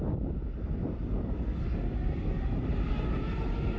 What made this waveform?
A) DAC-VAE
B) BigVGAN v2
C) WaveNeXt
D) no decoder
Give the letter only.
D